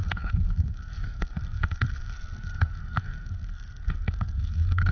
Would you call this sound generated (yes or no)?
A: yes